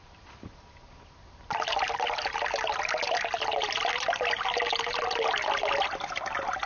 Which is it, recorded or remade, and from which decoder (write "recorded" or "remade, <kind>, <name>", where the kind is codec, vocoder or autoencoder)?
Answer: recorded